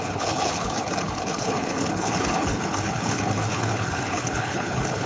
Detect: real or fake fake